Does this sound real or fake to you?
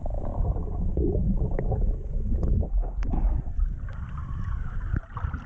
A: real